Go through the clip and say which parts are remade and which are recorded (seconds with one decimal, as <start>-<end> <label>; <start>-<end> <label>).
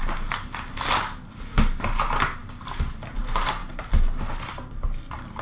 0.0-5.4 recorded